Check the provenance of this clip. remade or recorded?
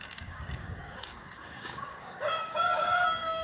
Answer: remade